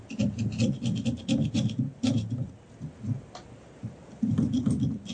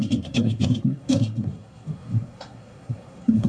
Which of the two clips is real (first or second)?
first